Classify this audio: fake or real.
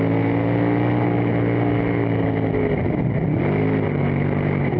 real